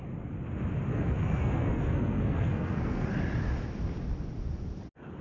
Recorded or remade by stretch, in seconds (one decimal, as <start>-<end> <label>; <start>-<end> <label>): 0.0-0.9 recorded; 0.9-3.1 remade; 3.1-5.2 recorded